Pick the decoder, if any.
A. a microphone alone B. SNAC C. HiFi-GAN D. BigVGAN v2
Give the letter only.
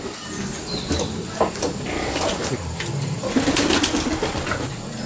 A